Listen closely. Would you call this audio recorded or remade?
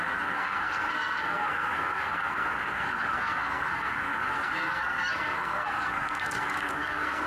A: remade